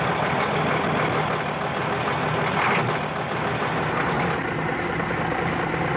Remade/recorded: recorded